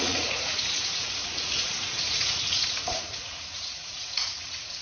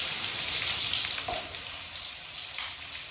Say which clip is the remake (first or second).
first